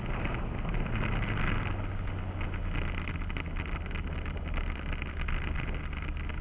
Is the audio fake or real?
real